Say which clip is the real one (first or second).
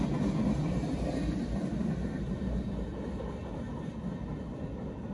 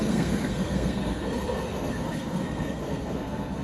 first